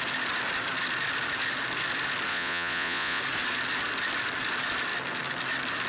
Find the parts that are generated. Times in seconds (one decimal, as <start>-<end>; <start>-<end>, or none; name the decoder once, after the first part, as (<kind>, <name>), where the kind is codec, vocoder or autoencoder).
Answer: 2.3-3.2 (vocoder, Vocos)